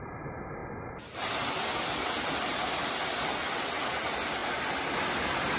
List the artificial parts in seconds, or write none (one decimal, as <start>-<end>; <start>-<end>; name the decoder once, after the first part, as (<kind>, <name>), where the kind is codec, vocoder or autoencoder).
none